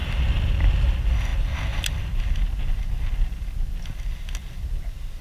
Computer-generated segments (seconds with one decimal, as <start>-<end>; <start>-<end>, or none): none

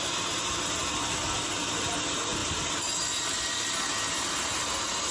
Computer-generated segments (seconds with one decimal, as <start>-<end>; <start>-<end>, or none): none